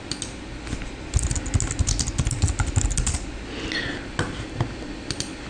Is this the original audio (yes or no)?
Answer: yes